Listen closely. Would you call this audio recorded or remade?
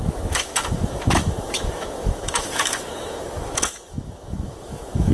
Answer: remade